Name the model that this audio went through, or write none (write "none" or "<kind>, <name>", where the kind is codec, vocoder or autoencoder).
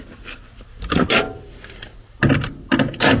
none